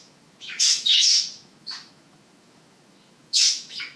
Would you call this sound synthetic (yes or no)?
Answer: yes